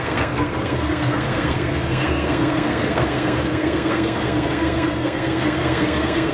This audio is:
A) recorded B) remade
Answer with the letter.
B